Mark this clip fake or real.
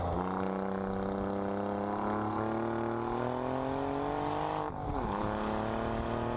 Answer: real